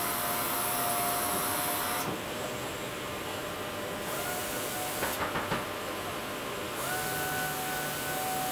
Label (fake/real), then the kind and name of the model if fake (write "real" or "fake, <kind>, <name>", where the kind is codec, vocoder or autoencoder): real